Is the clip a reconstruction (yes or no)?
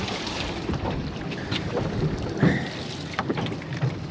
no